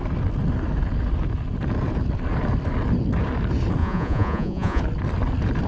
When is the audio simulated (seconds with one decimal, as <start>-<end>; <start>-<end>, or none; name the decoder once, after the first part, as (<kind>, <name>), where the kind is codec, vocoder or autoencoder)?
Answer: 3.8-4.8 (vocoder, Vocos)